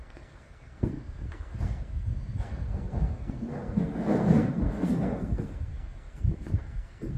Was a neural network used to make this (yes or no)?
yes